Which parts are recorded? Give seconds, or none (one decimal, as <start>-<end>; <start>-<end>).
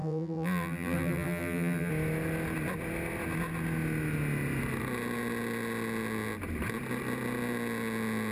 1.9-8.3